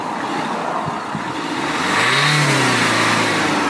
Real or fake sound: real